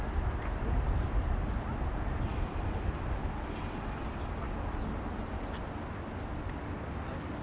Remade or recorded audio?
recorded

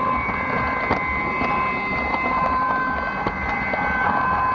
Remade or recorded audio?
recorded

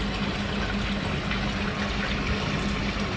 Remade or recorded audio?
recorded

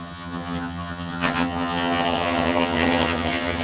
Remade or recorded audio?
remade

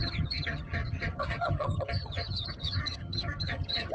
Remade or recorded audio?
remade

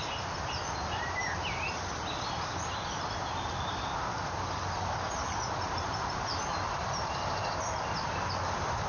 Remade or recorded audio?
recorded